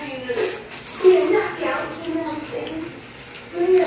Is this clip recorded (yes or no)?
yes